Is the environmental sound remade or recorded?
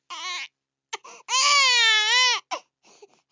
recorded